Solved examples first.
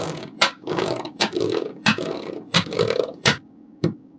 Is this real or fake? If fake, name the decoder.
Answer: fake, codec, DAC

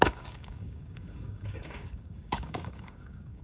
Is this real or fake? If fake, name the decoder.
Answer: fake, codec, DAC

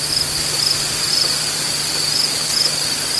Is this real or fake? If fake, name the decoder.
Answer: real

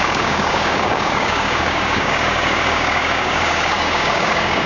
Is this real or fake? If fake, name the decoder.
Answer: fake, codec, DAC